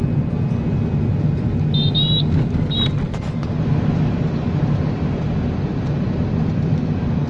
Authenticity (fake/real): real